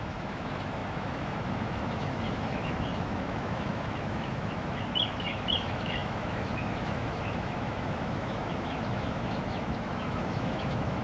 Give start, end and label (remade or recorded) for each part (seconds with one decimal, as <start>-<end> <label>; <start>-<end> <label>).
0.0-11.0 remade